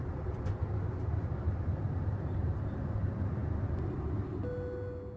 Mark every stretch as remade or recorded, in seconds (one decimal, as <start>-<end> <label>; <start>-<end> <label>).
0.0-5.2 recorded